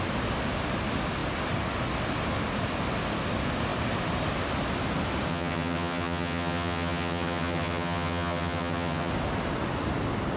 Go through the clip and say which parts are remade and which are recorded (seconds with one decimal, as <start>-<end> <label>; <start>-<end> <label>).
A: 0.0-5.3 recorded; 5.3-9.1 remade; 9.1-10.4 recorded